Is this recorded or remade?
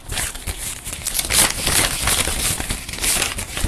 recorded